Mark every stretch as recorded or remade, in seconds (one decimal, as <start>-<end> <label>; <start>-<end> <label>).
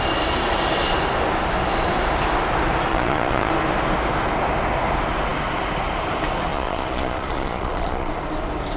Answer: 0.0-2.9 recorded; 2.9-3.5 remade; 3.5-6.5 recorded; 6.5-8.1 remade; 8.1-8.8 recorded